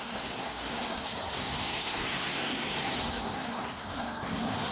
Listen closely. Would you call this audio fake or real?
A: fake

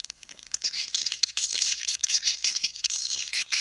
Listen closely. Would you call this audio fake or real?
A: fake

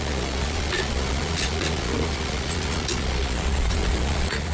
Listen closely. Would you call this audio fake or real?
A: fake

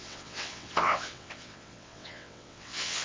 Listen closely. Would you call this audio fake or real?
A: fake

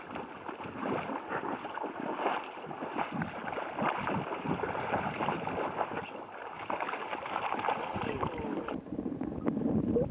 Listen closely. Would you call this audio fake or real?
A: real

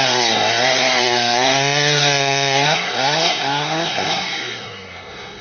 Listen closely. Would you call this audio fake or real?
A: fake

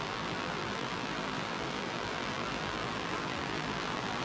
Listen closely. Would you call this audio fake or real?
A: fake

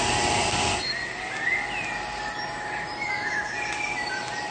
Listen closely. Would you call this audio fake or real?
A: real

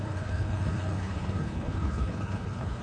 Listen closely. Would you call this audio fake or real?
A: fake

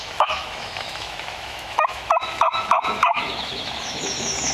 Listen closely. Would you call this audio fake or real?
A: fake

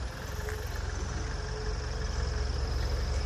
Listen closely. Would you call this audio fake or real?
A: real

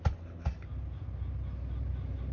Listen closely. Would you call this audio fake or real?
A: real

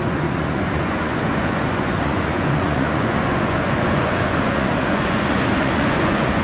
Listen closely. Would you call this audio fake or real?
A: fake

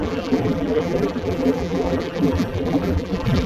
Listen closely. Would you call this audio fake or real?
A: fake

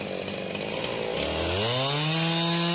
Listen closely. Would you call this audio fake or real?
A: real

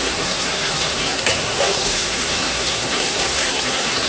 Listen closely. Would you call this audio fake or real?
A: fake